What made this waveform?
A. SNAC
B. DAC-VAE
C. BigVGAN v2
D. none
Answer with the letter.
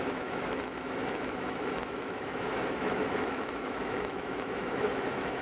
B